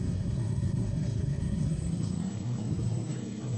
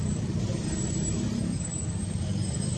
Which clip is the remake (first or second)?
first